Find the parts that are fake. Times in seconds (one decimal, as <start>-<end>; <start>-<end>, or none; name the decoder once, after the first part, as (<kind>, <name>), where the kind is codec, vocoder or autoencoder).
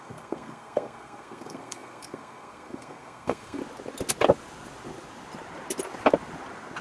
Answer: 0.0-3.6 (codec, SNAC)